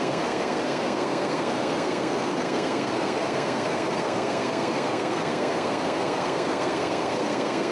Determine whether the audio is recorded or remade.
remade